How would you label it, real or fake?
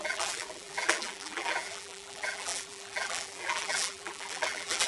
fake